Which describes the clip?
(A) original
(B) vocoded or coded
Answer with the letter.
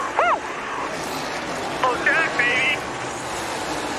A